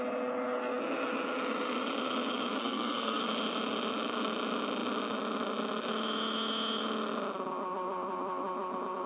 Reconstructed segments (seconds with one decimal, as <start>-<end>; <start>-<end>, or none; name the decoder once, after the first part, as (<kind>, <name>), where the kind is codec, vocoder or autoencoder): 2.6-3.2 (codec, SNAC)